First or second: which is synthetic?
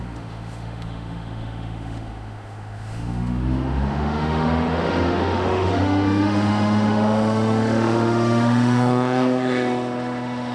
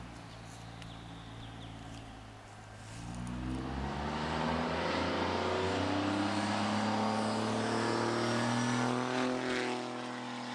first